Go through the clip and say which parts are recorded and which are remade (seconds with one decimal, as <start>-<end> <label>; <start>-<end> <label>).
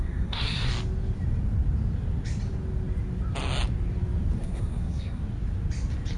0.0-0.7 remade; 0.7-4.4 recorded; 4.4-5.2 remade; 5.2-6.2 recorded